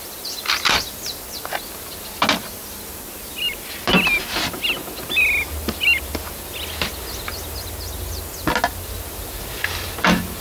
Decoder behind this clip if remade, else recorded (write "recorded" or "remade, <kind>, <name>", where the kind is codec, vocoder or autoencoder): recorded